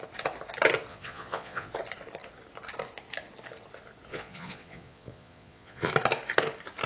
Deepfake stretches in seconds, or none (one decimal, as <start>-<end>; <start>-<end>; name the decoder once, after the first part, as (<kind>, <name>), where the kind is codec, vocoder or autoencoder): 0.9-1.7 (vocoder, Vocos); 4.1-5.9